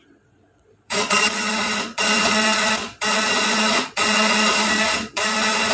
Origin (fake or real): fake